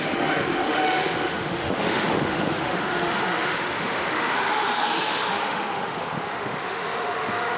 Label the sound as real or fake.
fake